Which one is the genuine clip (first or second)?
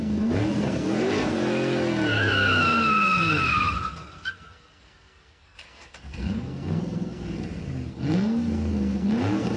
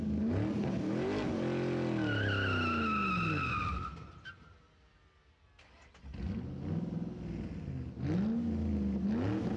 second